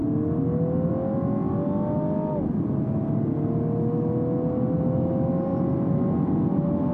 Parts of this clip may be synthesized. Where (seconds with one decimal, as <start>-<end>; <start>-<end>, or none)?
none